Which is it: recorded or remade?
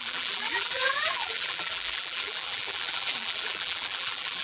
remade